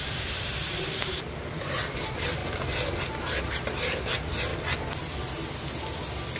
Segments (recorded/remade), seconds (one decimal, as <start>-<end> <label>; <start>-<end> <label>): 0.0-2.4 remade; 2.4-3.4 recorded; 3.4-4.5 remade; 4.5-6.4 recorded